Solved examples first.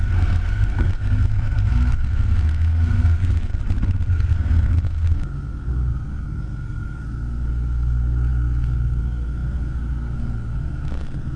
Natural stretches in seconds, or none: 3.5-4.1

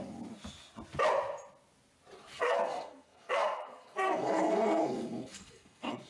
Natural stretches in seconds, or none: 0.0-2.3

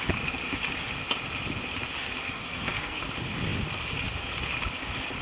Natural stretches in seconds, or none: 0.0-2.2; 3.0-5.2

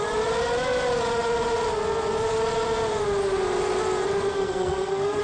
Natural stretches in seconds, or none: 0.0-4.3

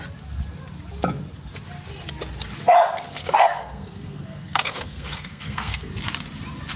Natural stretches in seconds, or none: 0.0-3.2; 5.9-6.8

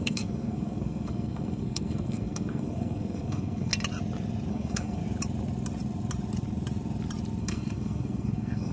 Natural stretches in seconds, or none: 3.7-4.5; 5.0-7.4

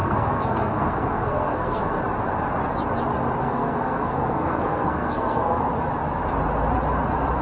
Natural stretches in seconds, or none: 2.0-3.4; 5.6-7.4

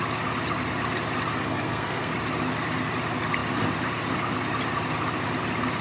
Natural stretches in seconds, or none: 0.0-1.5; 2.1-5.8